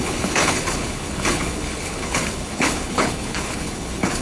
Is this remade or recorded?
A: remade